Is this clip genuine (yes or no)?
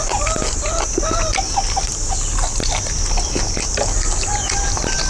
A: yes